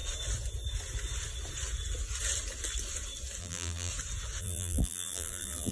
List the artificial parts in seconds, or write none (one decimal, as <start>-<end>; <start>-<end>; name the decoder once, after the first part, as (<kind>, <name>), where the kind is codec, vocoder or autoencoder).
3.4-3.9 (vocoder, BigVGAN v2); 4.4-5.7